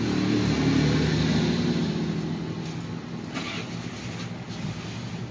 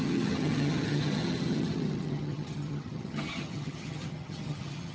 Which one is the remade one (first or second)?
second